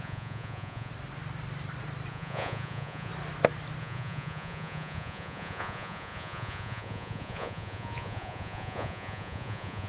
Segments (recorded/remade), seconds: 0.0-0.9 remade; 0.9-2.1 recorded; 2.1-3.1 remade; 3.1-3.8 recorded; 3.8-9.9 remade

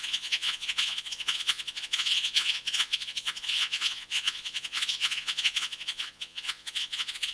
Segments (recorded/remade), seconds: 0.0-7.3 remade